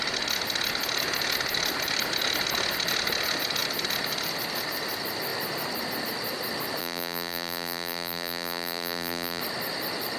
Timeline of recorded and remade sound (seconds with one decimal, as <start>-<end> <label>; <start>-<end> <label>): 0.0-6.8 recorded; 6.8-9.4 remade; 9.4-10.2 recorded